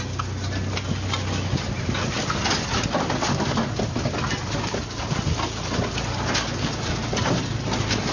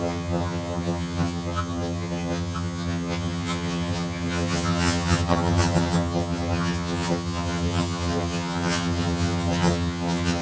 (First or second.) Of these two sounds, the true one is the first